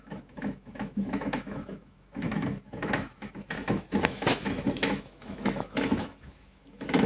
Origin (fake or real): fake